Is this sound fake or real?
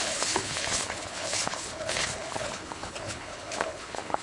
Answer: fake